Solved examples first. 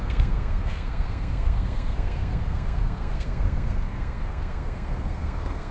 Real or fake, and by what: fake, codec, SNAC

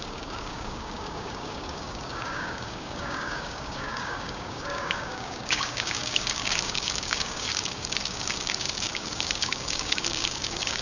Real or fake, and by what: fake, codec, DAC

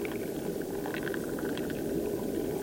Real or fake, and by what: real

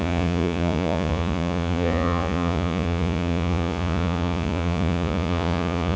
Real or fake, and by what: fake, vocoder, Vocos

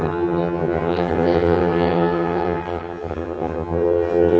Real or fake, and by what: fake, vocoder, HiFi-GAN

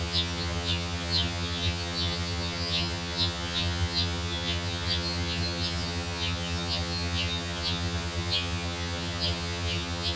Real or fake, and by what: fake, vocoder, HiFi-GAN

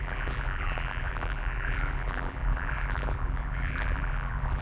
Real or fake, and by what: fake, vocoder, BigVGAN v2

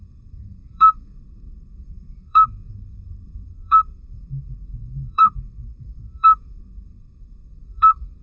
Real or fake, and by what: fake, codec, SNAC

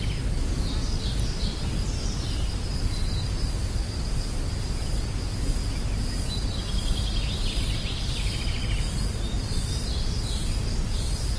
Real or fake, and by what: real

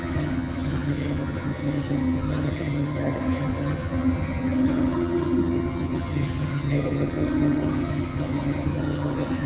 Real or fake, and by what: fake, vocoder, HiFi-GAN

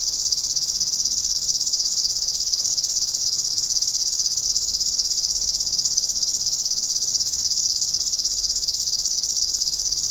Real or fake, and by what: fake, codec, SNAC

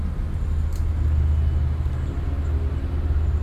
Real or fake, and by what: real